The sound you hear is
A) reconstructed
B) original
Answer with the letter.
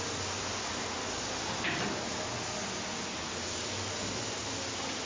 B